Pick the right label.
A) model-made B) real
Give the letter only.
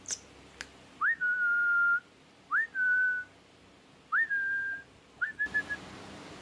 B